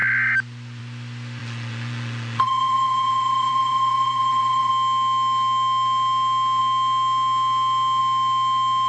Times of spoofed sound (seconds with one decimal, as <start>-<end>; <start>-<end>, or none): 1.4-4.7